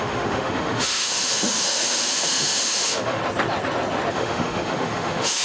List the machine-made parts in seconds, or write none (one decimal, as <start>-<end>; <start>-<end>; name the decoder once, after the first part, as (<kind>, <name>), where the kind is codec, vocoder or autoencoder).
0.0-3.2 (autoencoder, DAC-VAE); 4.1-5.4

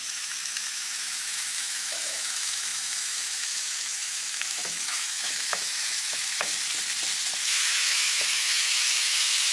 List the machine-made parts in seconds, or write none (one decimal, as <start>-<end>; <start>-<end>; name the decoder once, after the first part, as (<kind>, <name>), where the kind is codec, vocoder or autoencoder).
0.0-6.5 (autoencoder, DAC-VAE); 7.4-9.5

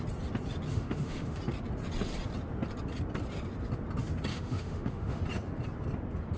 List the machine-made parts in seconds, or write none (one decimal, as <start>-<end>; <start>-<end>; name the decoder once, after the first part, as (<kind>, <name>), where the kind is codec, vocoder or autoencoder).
0.7-1.4 (autoencoder, DAC-VAE); 4.3-5.2

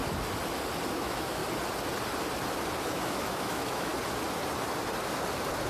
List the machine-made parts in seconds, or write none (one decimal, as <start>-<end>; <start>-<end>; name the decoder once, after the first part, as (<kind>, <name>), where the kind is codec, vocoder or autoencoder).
0.9-1.4 (autoencoder, DAC-VAE); 2.8-3.9